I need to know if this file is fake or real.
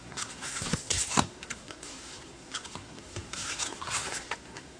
fake